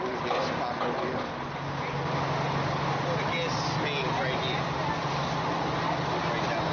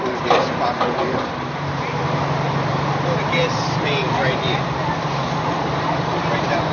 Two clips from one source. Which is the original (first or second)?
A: first